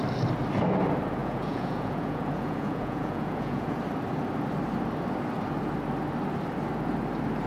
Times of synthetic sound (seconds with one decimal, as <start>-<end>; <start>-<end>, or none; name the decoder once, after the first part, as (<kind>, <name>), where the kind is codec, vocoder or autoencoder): 1.2-3.8 (vocoder, Vocos)